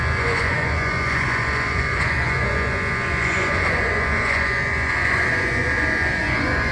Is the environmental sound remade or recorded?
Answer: remade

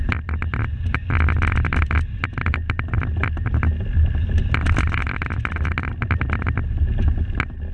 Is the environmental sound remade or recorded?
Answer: recorded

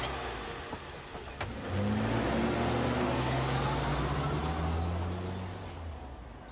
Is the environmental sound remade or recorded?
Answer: recorded